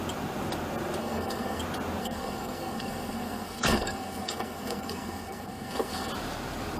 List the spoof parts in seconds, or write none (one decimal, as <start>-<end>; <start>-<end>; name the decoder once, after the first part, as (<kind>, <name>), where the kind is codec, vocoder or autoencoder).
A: 1.0-1.6 (codec, SNAC); 2.0-6.1